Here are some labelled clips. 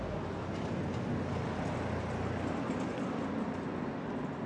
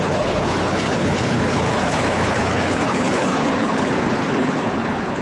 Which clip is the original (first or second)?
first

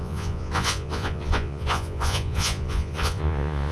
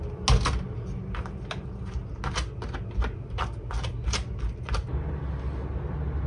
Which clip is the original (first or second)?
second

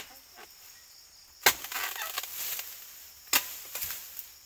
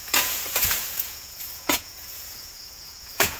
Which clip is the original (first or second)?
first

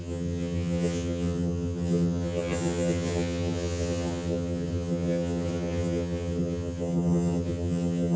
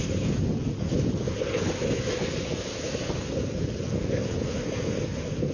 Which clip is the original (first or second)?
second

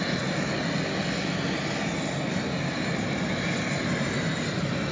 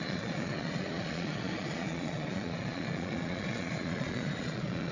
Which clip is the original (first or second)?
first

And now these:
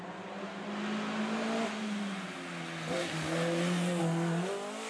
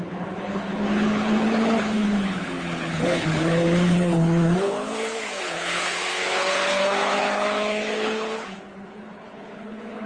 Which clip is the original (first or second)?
first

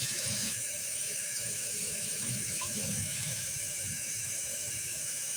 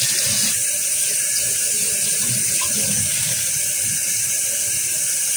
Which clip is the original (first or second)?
second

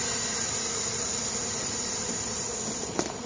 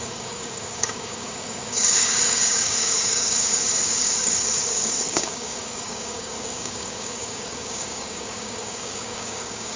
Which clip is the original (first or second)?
first